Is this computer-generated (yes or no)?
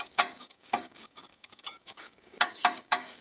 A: yes